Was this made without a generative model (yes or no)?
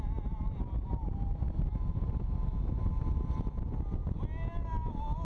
yes